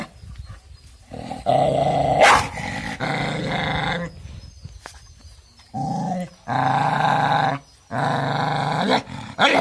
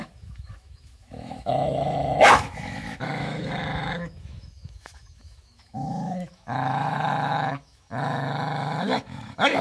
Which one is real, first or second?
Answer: first